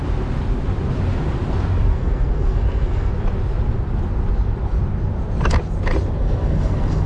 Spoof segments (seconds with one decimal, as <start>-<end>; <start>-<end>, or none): 1.9-3.1; 6.2-7.1